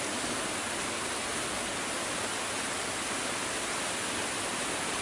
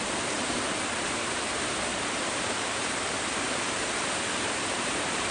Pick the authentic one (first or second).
first